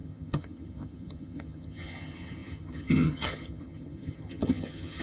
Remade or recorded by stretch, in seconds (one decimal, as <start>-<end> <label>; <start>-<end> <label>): 0.0-5.0 remade